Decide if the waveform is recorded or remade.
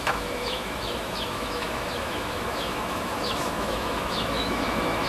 remade